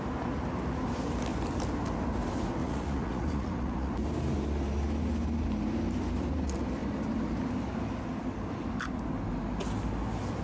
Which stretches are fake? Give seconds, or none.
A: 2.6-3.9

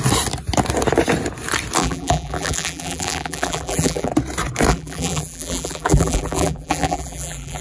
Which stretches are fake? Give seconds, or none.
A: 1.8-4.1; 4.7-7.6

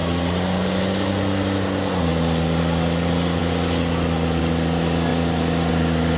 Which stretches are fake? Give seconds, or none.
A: none

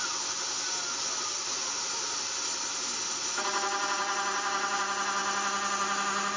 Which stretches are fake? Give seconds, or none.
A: none

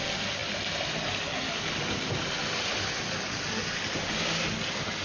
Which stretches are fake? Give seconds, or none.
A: none

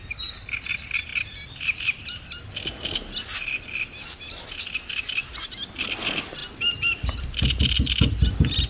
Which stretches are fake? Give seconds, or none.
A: none